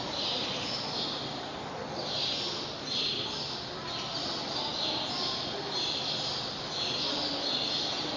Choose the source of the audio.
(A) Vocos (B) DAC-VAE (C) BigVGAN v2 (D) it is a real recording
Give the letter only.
D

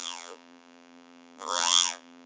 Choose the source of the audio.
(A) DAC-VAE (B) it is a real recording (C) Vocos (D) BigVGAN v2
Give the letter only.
D